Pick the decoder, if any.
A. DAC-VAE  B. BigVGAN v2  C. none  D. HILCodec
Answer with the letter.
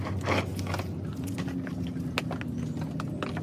C